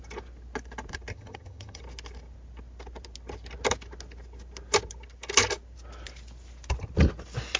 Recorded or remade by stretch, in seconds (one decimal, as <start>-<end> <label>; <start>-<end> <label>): 0.0-1.1 recorded; 1.1-1.8 remade; 1.8-7.6 recorded